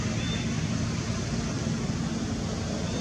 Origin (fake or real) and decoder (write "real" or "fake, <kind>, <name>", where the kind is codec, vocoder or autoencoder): real